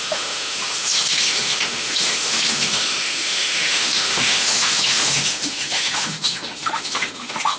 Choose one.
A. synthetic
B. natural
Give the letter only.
A